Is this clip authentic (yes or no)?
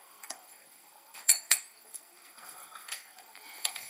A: no